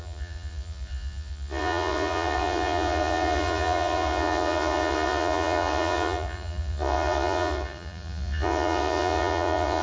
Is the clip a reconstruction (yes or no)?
yes